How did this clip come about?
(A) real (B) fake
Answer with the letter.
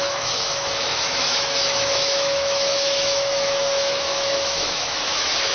B